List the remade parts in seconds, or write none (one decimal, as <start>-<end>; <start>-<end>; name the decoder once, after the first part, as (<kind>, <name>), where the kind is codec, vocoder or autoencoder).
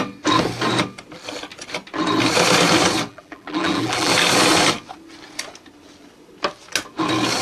3.1-4.1 (vocoder, BigVGAN v2)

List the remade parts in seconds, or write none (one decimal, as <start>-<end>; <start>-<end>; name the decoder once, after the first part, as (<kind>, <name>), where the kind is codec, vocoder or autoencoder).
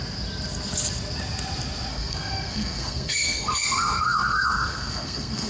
1.9-5.5 (codec, SNAC)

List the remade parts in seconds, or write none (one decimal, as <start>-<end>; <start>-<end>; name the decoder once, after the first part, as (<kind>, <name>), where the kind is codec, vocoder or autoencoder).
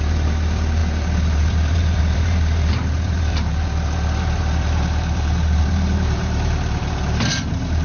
0.0-7.8 (vocoder, BigVGAN v2)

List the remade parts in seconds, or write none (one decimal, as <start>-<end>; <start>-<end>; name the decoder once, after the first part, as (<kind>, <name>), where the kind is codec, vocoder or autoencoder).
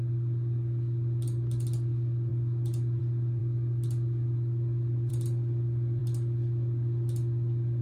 none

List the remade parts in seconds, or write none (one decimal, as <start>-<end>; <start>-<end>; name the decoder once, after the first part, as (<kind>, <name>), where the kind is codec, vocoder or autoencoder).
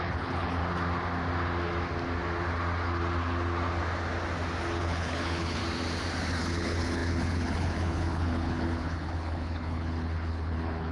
0.0-0.6 (codec, HILCodec); 4.8-5.6; 6.4-10.9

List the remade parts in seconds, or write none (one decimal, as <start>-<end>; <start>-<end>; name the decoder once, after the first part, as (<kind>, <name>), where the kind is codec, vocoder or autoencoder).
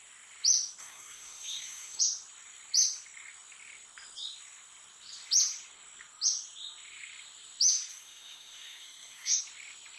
0.8-2.0 (codec, SNAC); 7.9-9.4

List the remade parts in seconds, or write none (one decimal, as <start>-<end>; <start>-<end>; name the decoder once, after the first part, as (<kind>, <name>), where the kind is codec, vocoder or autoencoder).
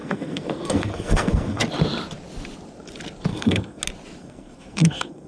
0.0-1.6 (codec, SNAC); 3.3-3.8; 4.2-5.3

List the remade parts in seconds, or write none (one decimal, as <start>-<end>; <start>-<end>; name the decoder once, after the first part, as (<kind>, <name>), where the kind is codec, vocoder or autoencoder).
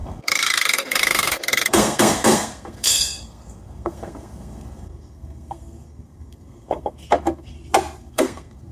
0.0-7.5 (codec, SNAC); 8.0-8.7